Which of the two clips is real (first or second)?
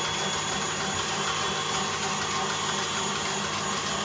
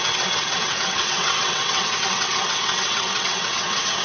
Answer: first